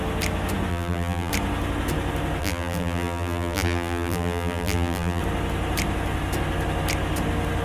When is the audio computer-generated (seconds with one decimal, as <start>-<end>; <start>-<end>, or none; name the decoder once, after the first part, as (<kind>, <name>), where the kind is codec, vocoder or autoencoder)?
0.7-1.3 (vocoder, BigVGAN v2); 2.4-5.2